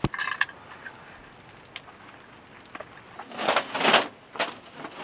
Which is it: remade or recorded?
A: recorded